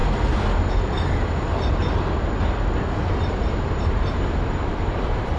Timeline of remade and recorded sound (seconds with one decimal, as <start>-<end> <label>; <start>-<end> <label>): 0.0-3.2 recorded; 3.2-5.4 remade